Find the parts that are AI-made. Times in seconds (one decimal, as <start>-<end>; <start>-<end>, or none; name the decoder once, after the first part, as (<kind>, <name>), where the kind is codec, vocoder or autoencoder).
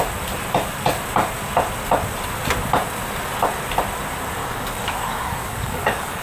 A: 4.4-6.2 (codec, DAC)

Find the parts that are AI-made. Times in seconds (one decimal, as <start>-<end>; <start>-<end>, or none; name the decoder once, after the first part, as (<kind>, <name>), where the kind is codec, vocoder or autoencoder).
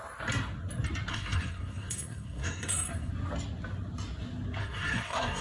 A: 1.1-3.1 (codec, SNAC); 4.6-5.4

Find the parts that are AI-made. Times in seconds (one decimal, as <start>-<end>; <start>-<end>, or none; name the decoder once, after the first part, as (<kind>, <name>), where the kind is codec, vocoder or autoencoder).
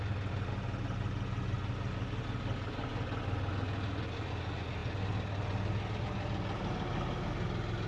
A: none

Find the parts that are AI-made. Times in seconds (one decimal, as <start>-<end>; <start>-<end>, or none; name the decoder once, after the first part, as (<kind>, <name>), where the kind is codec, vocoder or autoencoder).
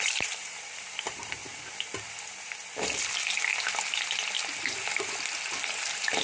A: 0.0-1.4 (vocoder, BigVGAN v2); 3.0-3.5; 5.6-6.2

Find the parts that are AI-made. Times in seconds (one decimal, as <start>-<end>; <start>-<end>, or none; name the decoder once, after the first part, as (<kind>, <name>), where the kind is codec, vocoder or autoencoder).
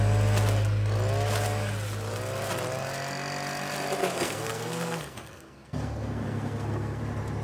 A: 4.0-7.0 (codec, SNAC)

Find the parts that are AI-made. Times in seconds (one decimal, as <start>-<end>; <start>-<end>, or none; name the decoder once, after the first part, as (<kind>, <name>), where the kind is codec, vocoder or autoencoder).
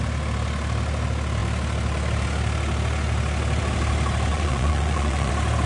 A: 4.3-5.3 (vocoder, Vocos)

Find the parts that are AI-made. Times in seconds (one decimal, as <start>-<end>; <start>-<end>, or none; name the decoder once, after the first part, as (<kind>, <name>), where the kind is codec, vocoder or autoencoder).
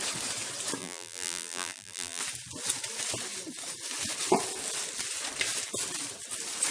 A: 0.8-2.2 (vocoder, BigVGAN v2)